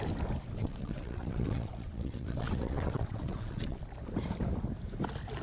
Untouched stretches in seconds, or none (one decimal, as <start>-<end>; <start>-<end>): 0.0-0.6; 3.8-5.4